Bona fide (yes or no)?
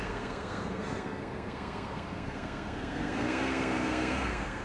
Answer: no